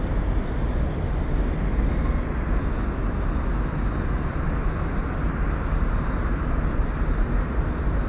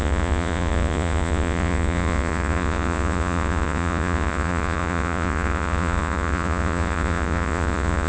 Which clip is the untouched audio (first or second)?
first